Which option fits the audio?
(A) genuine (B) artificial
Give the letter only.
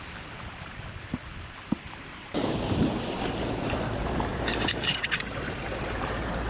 B